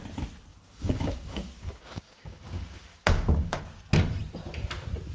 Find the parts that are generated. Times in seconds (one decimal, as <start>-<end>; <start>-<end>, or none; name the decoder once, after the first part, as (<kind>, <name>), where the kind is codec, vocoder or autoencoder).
0.5-3.6 (codec, DAC)